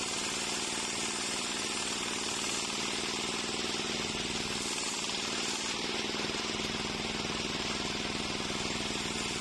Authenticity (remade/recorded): recorded